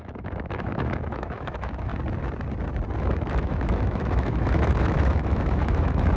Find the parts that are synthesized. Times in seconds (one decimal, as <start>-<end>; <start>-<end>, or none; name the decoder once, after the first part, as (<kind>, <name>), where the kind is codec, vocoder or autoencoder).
0.0-1.9 (autoencoder, DAC-VAE); 3.0-6.2